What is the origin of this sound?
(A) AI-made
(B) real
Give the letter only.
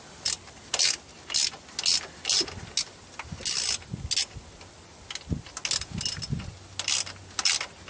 B